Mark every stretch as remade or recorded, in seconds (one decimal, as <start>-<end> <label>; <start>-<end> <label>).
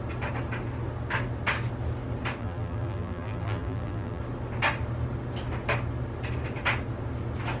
0.0-2.4 recorded; 2.4-4.2 remade; 4.2-7.6 recorded